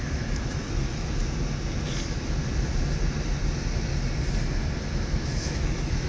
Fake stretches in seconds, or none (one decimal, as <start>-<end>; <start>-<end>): 0.0-1.2; 4.9-6.1